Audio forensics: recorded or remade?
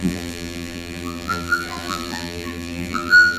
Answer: remade